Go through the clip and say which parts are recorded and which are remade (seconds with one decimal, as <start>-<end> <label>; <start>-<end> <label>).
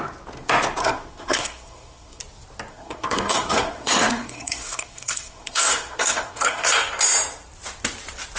0.0-0.8 recorded; 0.8-2.2 remade; 2.2-2.7 recorded; 2.7-6.7 remade; 6.7-8.4 recorded